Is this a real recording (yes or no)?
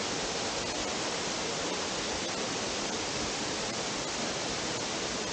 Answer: yes